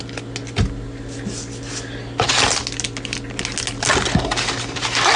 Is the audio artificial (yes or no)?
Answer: no